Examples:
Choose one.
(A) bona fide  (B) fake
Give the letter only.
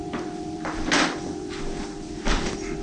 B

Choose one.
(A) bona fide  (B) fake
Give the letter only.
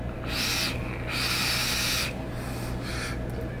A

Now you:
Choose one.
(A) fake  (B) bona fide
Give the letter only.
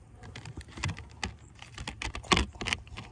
B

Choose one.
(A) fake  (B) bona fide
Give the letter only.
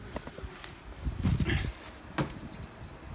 B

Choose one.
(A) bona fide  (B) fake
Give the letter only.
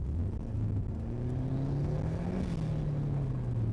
A